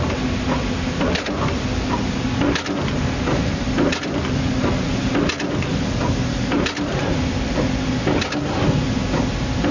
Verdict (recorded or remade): recorded